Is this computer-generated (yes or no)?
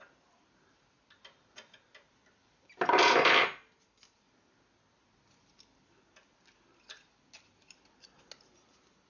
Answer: no